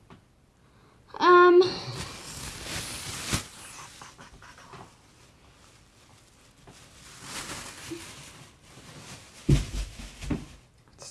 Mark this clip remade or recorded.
recorded